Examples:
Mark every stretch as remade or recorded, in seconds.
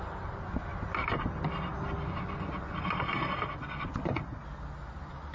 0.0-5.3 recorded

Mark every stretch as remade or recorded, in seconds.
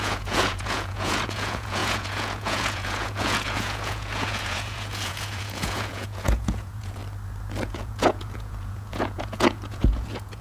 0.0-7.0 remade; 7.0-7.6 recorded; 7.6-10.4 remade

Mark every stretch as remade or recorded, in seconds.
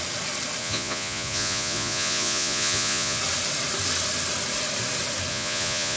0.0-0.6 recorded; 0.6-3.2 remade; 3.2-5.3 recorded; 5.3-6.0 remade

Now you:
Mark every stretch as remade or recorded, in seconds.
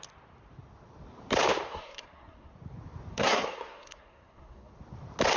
0.0-1.7 recorded; 1.7-2.5 remade; 2.5-3.1 recorded; 3.1-4.7 remade; 4.7-5.4 recorded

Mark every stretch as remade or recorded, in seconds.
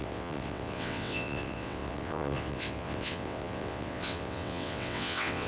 0.0-5.5 remade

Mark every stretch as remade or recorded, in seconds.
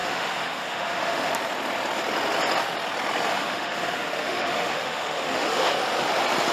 0.0-1.3 remade; 1.3-3.3 recorded; 3.3-5.8 remade; 5.8-6.5 recorded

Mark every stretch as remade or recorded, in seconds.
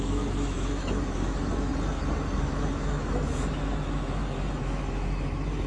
0.0-1.7 remade; 1.7-2.4 recorded; 2.4-5.7 remade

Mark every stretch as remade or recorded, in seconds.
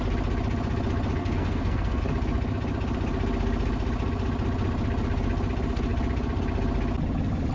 0.0-1.2 recorded; 1.2-2.0 remade; 2.0-7.5 recorded